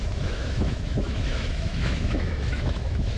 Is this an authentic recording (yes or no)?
no